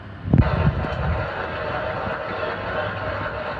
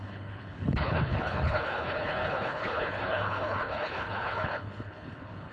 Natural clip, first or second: first